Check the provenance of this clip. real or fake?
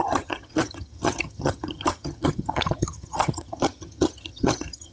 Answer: fake